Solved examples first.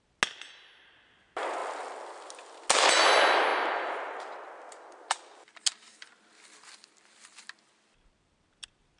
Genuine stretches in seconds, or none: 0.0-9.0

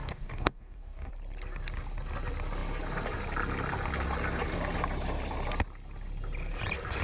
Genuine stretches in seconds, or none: 1.1-7.0

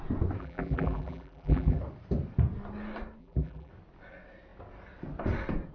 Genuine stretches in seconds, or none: 0.0-0.4; 1.8-3.2; 3.7-5.7

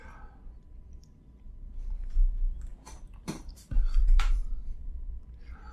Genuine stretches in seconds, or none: 0.0-2.7; 4.6-5.7